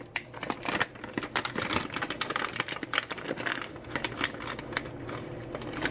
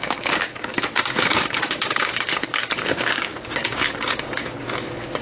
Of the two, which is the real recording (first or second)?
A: first